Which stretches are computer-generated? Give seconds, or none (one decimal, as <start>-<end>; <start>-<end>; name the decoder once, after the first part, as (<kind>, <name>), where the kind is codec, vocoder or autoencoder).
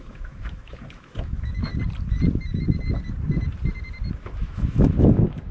0.0-1.7 (autoencoder, DAC-VAE); 4.2-5.5